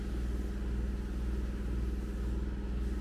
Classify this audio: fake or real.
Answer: real